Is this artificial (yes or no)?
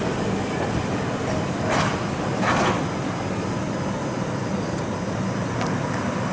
no